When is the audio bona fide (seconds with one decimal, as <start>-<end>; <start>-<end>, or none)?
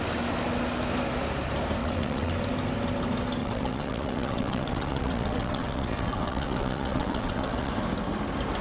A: 0.0-1.8; 2.3-3.4; 7.7-8.6